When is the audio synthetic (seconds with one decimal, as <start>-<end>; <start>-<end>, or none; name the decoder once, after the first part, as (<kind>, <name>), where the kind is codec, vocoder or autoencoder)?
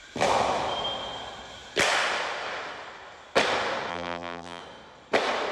3.9-4.6 (vocoder, BigVGAN v2)